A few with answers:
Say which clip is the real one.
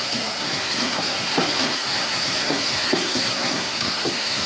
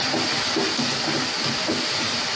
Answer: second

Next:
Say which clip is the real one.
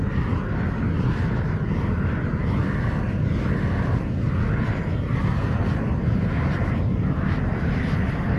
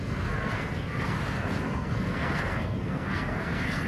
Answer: first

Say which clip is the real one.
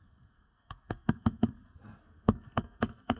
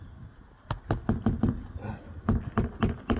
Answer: second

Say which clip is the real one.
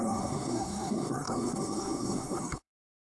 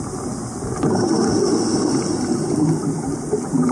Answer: second